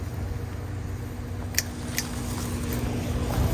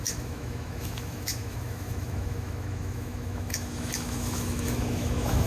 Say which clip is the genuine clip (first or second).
first